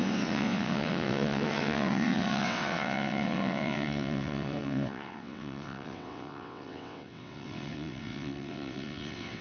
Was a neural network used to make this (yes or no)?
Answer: yes